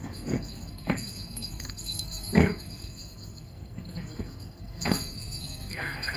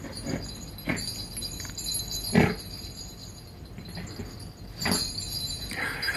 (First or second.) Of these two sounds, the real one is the second